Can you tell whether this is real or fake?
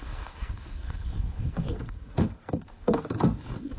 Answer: fake